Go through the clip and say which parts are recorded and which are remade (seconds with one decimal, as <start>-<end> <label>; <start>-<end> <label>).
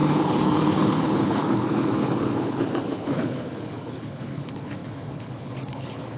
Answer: 0.0-6.2 remade